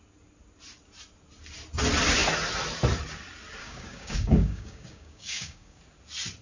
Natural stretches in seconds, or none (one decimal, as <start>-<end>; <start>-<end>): 0.0-3.6; 5.8-6.4